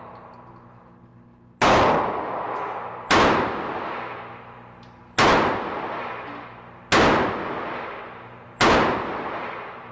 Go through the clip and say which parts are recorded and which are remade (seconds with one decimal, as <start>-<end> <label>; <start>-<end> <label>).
0.0-9.9 recorded